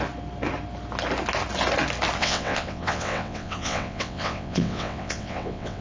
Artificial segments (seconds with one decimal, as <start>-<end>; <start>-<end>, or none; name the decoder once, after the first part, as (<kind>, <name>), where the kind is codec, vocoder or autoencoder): 2.2-5.8 (vocoder, WaveNeXt)